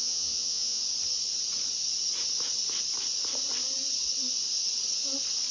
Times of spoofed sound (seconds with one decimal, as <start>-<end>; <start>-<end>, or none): 0.0-0.8